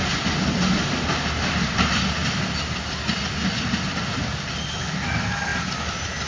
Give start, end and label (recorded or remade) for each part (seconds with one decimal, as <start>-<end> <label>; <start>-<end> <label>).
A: 0.0-2.2 remade; 2.2-4.8 recorded; 4.8-5.5 remade; 5.5-6.3 recorded